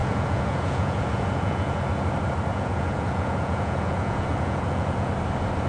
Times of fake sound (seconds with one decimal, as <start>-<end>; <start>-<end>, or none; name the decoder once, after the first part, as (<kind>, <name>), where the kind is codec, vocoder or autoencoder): 0.0-1.9 (vocoder, Vocos); 2.5-5.1